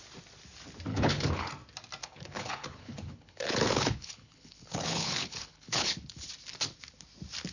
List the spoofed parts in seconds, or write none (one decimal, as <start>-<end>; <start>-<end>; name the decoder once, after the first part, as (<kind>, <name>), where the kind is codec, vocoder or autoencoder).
0.9-1.5 (codec, HILCodec); 2.0-6.3